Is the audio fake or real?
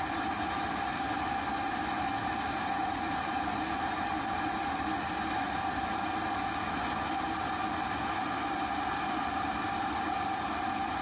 real